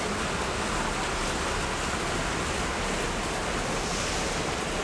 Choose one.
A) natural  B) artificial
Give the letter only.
A